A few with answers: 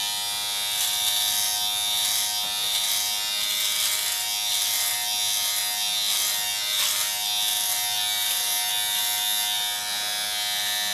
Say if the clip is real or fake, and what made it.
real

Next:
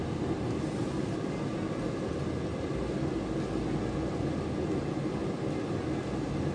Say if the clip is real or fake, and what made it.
real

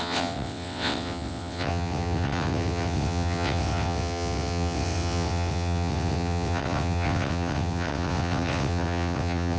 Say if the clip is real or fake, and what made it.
fake, vocoder, WaveNeXt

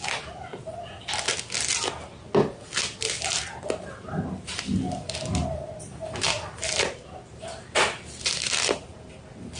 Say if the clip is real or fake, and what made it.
real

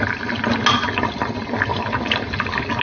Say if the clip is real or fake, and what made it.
real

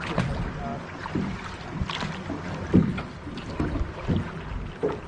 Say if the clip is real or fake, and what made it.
real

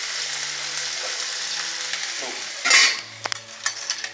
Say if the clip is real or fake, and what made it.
real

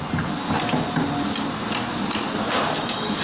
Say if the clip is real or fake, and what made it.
real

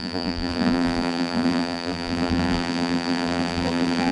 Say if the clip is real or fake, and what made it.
fake, vocoder, BigVGAN v2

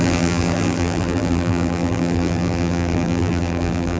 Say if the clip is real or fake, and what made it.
fake, vocoder, BigVGAN v2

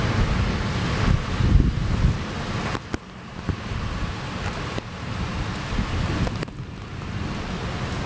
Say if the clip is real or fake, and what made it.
real